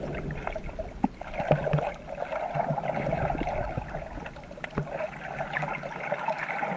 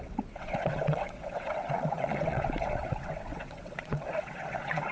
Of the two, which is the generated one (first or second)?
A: second